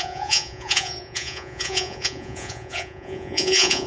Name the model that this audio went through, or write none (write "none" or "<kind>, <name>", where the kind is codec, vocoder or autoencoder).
vocoder, Vocos